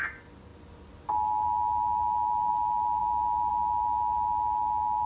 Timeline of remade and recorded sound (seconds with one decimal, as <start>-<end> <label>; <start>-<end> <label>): 0.0-5.1 recorded